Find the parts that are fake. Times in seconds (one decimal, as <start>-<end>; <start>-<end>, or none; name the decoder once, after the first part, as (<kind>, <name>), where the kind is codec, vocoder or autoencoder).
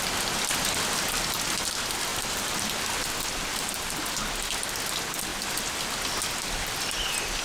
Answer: 2.1-2.6 (vocoder, BigVGAN v2); 3.5-4.0